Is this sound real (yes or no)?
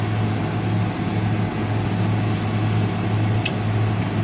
yes